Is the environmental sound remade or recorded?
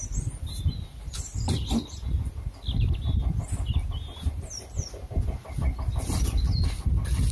recorded